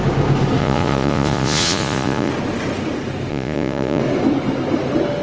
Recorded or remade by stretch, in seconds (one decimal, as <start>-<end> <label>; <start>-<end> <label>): 0.0-0.6 recorded; 0.6-2.3 remade; 2.3-3.3 recorded; 3.3-4.0 remade; 4.0-5.2 recorded